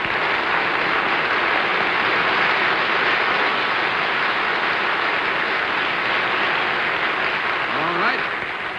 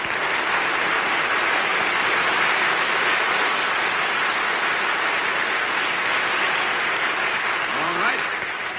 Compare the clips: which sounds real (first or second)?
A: first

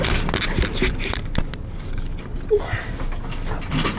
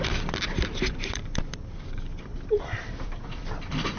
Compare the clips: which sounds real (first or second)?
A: first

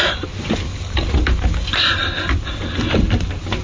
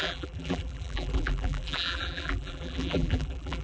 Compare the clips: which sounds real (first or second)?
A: first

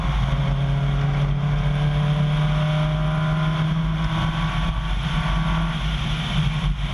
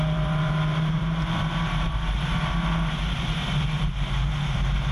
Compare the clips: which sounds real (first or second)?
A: first